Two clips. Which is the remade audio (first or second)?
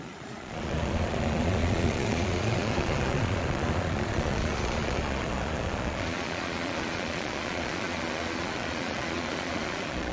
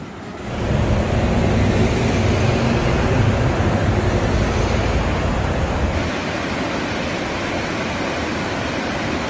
first